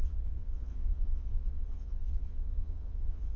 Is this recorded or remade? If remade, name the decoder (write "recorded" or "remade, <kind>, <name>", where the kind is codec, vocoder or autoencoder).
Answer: remade, vocoder, Vocos